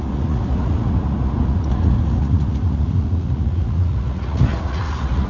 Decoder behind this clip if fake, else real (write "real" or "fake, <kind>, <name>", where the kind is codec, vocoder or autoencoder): fake, vocoder, Vocos